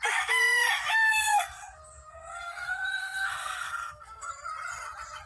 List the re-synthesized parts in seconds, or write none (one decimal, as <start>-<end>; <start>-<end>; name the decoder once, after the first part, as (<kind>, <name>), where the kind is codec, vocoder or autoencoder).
1.1-4.3 (codec, SNAC)